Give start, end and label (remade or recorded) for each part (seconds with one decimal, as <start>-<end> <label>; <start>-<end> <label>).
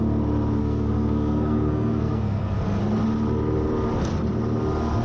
0.0-0.6 recorded; 0.6-2.8 remade; 2.8-5.0 recorded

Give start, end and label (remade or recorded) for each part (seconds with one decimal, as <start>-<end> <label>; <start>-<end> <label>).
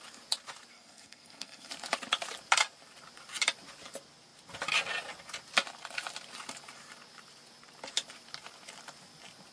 0.0-0.7 recorded; 0.7-1.7 remade; 1.7-9.5 recorded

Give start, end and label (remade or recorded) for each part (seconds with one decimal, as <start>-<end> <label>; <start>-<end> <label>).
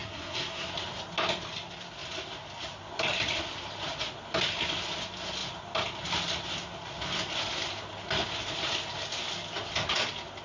0.0-0.7 remade; 0.7-10.4 recorded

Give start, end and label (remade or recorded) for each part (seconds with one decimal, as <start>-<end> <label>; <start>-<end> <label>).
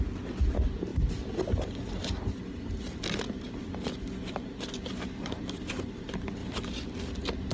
0.0-7.5 recorded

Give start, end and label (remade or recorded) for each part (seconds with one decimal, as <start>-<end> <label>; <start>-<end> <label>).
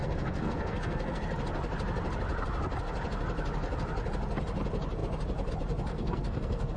0.0-1.2 remade; 1.2-5.9 recorded; 5.9-6.8 remade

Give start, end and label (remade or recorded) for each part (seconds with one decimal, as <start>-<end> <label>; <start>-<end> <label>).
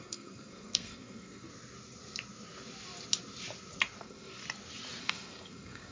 0.0-1.5 remade; 1.5-4.0 recorded; 4.0-4.4 remade; 4.4-5.0 recorded; 5.0-5.9 remade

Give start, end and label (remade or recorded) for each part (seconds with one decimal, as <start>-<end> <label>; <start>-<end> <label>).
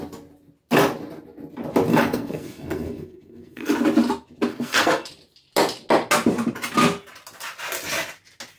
0.0-1.9 recorded; 1.9-3.7 remade; 3.7-4.5 recorded; 4.5-5.1 remade; 5.1-8.6 recorded